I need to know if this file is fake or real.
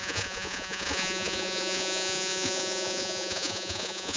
fake